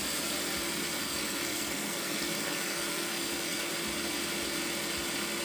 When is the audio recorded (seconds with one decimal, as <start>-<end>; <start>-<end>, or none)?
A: 0.0-1.0; 3.7-5.4